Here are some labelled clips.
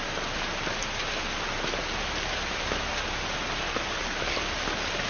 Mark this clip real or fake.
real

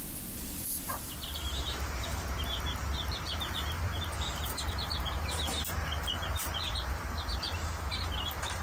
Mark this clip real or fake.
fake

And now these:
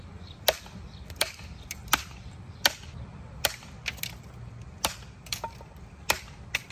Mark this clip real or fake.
fake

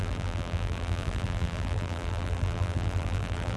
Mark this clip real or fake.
fake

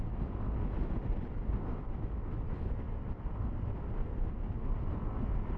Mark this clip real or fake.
real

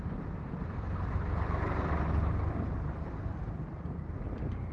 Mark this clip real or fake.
fake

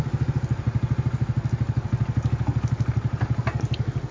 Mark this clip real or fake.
real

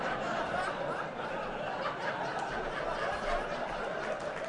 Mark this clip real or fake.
real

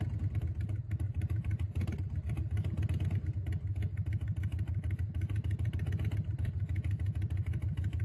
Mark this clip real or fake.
fake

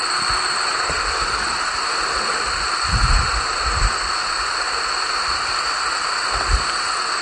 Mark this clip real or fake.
fake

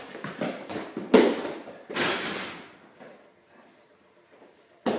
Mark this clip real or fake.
real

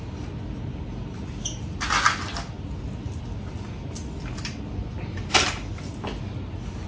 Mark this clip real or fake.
real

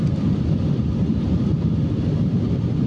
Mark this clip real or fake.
fake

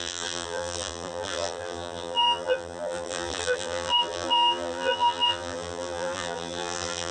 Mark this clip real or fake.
fake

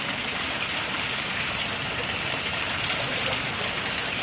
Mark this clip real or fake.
fake